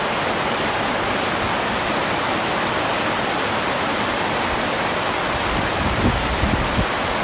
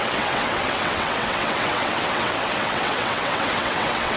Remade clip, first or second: second